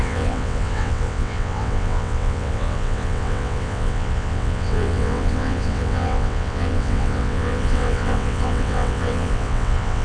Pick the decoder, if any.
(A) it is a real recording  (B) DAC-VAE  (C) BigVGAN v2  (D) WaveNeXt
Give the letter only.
D